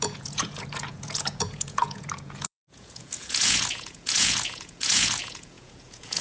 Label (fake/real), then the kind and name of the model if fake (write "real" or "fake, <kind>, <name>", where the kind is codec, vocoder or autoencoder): fake, vocoder, Vocos